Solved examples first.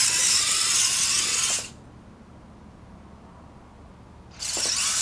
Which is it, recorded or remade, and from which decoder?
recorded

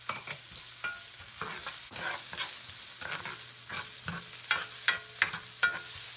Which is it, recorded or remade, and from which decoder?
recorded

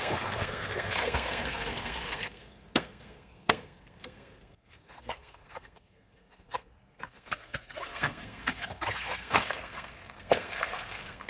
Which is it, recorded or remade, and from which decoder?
remade, codec, SNAC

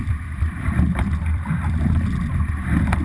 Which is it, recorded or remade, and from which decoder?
remade, vocoder, BigVGAN v2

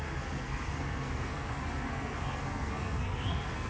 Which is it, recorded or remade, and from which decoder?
remade, codec, SNAC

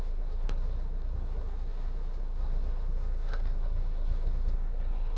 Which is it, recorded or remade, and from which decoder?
remade, codec, SNAC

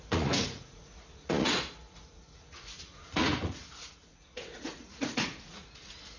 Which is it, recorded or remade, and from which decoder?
remade, vocoder, Vocos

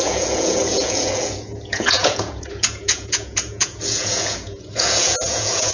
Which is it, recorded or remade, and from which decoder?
remade, vocoder, Vocos